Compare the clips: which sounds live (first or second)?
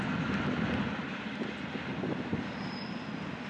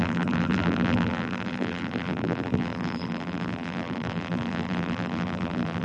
first